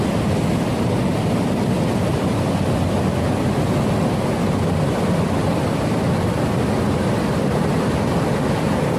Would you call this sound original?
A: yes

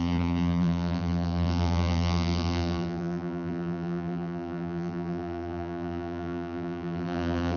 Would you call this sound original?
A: no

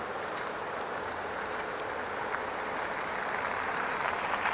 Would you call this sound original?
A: no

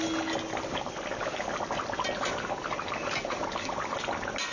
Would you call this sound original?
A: yes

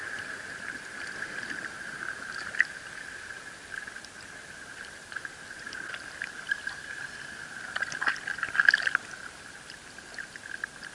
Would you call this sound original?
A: yes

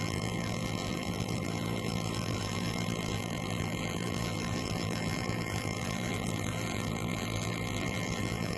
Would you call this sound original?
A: no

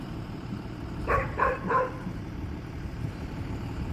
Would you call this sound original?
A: no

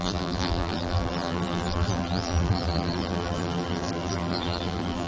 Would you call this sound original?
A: no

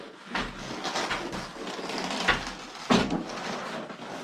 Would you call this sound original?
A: yes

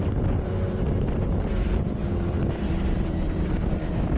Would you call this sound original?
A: no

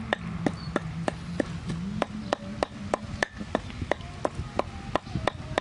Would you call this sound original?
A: yes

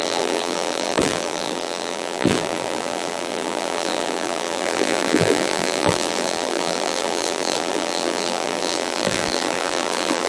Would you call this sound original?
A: no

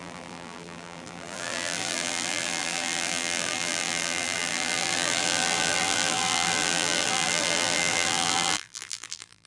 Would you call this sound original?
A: no